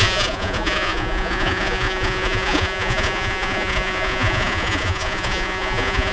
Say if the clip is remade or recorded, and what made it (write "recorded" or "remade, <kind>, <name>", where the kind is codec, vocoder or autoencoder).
remade, vocoder, Vocos